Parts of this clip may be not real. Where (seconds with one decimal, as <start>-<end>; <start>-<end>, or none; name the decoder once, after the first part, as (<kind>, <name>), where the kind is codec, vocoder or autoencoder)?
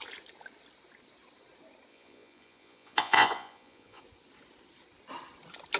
1.9-4.0 (vocoder, Vocos)